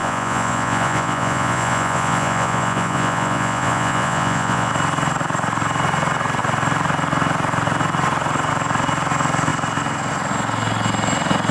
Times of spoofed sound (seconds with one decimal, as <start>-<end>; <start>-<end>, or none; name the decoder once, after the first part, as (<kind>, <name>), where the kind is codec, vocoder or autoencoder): 0.0-4.7 (vocoder, Vocos)